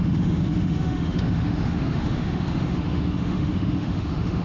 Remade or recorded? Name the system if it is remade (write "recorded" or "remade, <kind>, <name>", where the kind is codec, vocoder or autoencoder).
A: remade, autoencoder, DAC-VAE